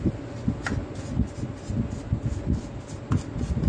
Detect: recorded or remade recorded